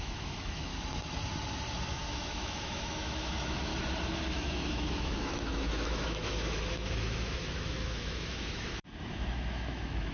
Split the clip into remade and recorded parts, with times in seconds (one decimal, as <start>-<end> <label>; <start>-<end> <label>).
0.0-0.7 remade; 0.7-1.9 recorded; 1.9-3.7 remade; 3.7-4.3 recorded; 4.3-10.1 remade